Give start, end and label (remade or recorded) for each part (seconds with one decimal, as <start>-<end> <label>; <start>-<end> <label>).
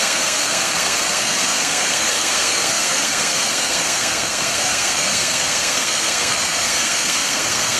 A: 0.0-7.8 remade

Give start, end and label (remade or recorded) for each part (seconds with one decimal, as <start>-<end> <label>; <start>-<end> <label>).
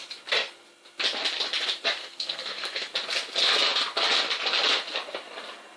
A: 0.0-2.0 recorded; 2.0-2.9 remade; 2.9-5.8 recorded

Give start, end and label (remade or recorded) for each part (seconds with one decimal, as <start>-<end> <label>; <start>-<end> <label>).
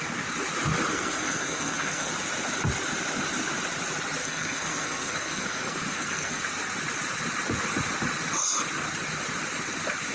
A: 0.0-0.9 recorded; 0.9-2.1 remade; 2.1-4.2 recorded; 4.2-6.4 remade; 6.4-10.1 recorded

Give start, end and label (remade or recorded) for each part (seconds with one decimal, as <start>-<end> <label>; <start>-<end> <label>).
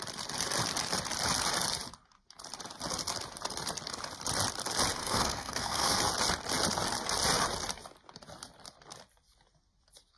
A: 0.0-5.0 recorded; 5.0-6.0 remade; 6.0-10.2 recorded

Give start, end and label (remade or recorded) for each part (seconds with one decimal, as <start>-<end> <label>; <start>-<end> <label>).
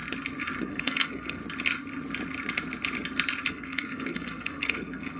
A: 0.0-0.6 recorded; 0.6-1.4 remade; 1.4-3.5 recorded; 3.5-5.2 remade